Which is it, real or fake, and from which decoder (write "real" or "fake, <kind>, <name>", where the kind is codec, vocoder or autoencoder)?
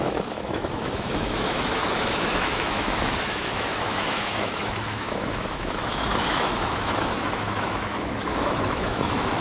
fake, autoencoder, DAC-VAE